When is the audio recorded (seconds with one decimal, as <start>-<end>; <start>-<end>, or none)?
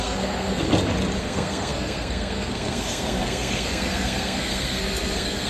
0.6-1.2